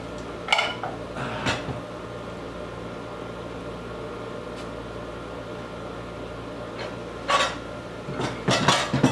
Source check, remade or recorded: recorded